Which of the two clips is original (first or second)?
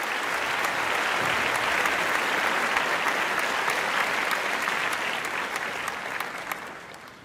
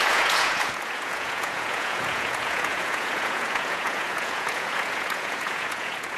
first